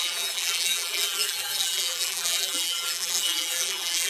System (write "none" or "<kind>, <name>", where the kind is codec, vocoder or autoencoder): vocoder, BigVGAN v2